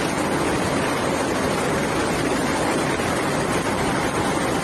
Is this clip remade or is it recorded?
recorded